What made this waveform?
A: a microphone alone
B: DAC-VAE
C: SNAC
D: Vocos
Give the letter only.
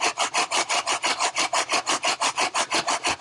A